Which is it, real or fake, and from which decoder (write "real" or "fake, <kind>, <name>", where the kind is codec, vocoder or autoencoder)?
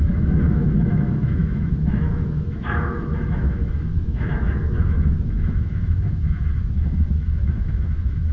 fake, autoencoder, DAC-VAE